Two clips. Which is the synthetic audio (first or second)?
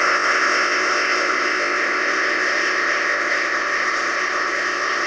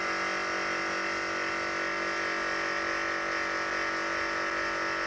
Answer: first